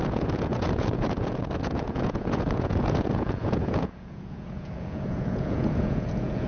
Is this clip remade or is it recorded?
remade